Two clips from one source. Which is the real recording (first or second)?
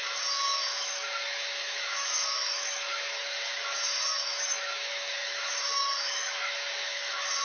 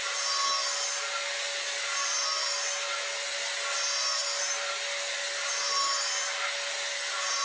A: second